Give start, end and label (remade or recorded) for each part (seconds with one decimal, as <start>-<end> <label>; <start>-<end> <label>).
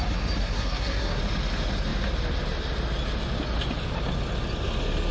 0.0-0.4 recorded; 0.4-1.2 remade; 1.2-5.1 recorded